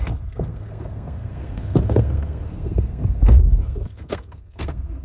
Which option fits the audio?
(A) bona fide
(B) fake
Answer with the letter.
B